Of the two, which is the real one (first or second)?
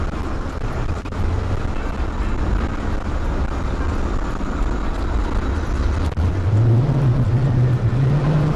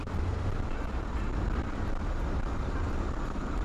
first